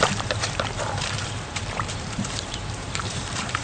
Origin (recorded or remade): remade